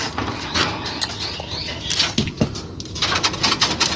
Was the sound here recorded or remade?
recorded